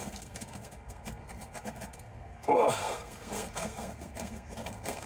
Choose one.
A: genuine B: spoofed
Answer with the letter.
B